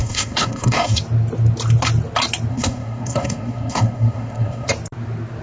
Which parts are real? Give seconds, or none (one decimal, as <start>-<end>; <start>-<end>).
1.0-2.5; 4.7-5.4